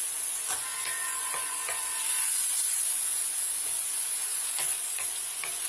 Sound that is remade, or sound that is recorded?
remade